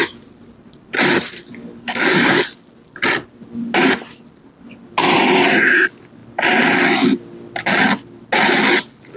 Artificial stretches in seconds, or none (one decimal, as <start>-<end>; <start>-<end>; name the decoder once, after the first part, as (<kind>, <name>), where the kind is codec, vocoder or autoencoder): 1.6-2.4 (codec, DAC)